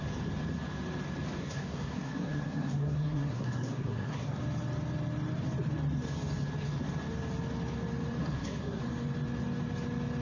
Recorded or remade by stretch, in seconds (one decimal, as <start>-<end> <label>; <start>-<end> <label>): 0.0-1.4 recorded; 1.4-4.4 remade; 4.4-8.2 recorded; 8.2-8.8 remade; 8.8-10.2 recorded